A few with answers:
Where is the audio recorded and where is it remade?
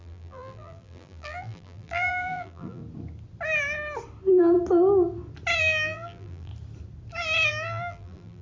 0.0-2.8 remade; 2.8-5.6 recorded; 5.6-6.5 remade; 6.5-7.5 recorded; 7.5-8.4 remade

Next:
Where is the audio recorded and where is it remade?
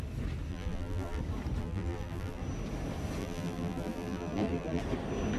0.0-0.5 recorded; 0.5-1.2 remade; 1.2-1.6 recorded; 1.6-2.4 remade; 2.4-3.2 recorded; 3.2-4.8 remade; 4.8-5.4 recorded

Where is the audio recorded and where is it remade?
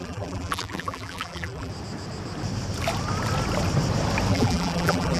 0.0-1.7 remade; 1.7-4.3 recorded; 4.3-5.2 remade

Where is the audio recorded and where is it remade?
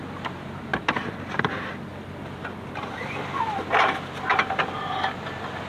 0.0-5.7 recorded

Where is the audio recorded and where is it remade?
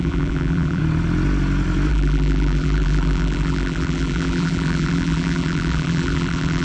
0.0-0.8 remade; 0.8-1.9 recorded; 1.9-6.6 remade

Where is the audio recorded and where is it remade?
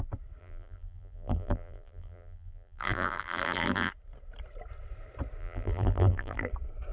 0.0-0.4 recorded; 0.4-3.9 remade; 3.9-5.4 recorded; 5.4-6.5 remade; 6.5-6.9 recorded